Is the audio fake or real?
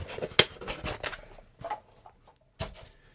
real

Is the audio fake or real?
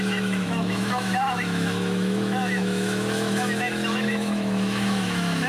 fake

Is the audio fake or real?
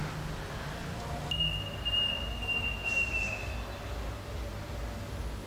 real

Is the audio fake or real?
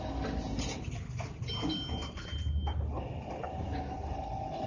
real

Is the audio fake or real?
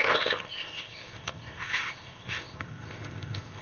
fake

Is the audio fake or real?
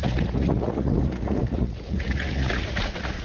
fake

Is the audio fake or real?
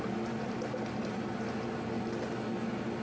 real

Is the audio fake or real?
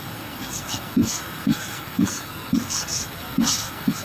fake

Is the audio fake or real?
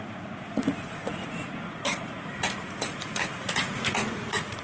fake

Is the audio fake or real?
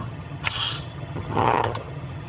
fake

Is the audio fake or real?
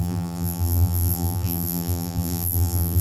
fake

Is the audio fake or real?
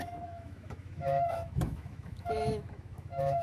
fake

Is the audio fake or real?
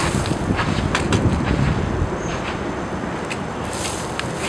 real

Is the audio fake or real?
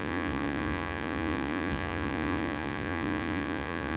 fake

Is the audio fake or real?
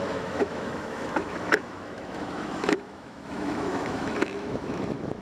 fake